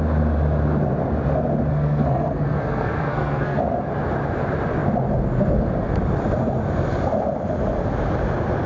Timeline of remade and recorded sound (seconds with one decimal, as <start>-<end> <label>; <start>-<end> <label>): 0.0-1.7 recorded; 1.7-3.6 remade; 3.6-8.7 recorded